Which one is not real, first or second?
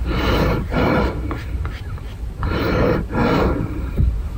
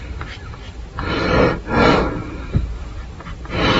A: first